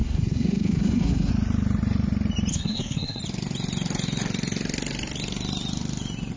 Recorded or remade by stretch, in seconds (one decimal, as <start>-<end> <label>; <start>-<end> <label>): 0.0-1.3 remade; 1.3-2.5 recorded; 2.5-3.2 remade; 3.2-6.4 recorded